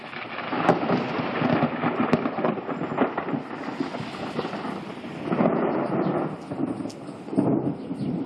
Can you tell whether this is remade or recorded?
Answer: recorded